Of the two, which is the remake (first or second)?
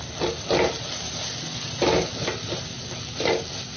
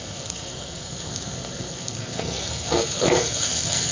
second